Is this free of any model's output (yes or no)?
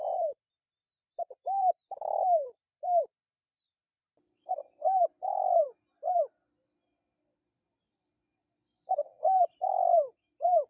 no